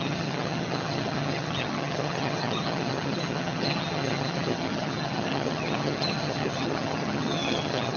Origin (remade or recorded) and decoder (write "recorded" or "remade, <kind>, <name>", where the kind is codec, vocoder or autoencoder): remade, vocoder, HiFi-GAN